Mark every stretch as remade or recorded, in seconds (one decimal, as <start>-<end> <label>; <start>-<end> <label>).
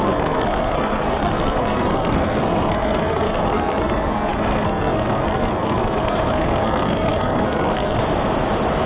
0.0-8.0 remade; 8.0-8.9 recorded